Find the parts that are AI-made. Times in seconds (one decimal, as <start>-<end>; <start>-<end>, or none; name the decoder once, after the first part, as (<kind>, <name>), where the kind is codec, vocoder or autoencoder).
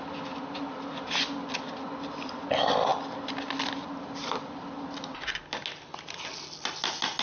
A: none